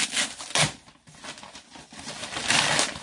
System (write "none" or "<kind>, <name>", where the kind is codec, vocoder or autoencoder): none